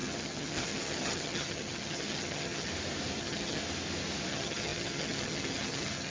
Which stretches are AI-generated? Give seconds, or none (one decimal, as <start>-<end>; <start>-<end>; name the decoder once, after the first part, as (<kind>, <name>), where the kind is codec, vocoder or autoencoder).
0.0-2.7 (vocoder, HiFi-GAN); 3.2-3.6; 4.3-6.1